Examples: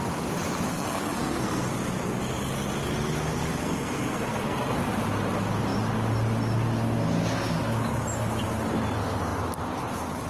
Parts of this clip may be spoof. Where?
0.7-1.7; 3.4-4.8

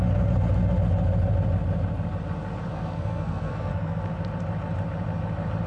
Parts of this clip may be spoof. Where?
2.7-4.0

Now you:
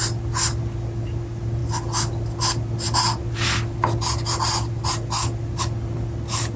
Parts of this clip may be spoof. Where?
none